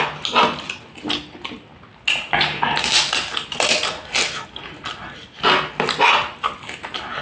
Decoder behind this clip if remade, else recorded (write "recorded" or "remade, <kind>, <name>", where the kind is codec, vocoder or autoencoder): recorded